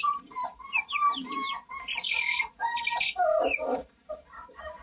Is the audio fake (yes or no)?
no